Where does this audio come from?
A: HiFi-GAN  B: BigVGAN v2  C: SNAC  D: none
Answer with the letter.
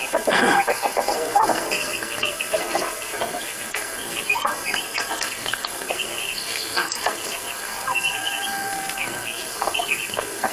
C